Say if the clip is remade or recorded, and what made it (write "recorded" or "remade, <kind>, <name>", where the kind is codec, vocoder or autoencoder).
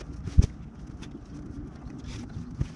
recorded